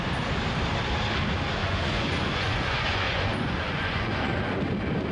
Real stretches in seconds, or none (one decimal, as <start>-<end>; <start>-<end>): 0.0-1.6; 4.6-5.1